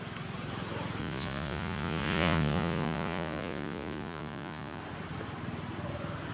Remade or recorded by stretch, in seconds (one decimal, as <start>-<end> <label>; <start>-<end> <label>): 0.0-1.0 recorded; 1.0-4.8 remade; 4.8-6.3 recorded